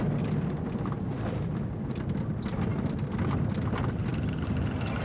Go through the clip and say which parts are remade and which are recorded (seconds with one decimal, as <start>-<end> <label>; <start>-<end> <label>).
0.0-5.0 recorded